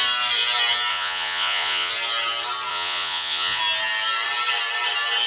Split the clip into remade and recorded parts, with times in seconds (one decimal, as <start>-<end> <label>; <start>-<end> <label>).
0.0-0.9 recorded; 0.9-1.9 remade; 1.9-2.7 recorded; 2.7-3.6 remade; 3.6-5.3 recorded